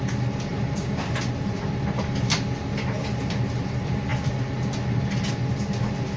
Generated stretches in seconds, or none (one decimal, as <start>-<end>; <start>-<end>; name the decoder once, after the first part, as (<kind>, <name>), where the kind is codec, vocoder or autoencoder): none